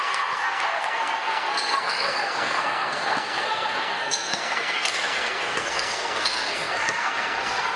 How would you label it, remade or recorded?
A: remade